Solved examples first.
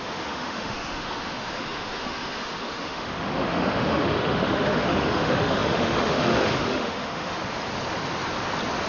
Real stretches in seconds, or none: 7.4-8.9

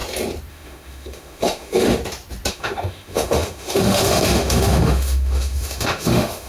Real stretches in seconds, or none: 0.0-0.5; 2.0-2.5